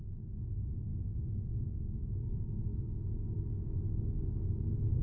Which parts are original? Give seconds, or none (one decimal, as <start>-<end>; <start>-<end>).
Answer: 0.0-2.7; 4.5-5.0